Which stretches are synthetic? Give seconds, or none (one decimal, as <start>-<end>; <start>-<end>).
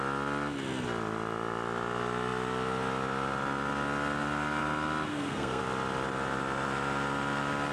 5.1-5.6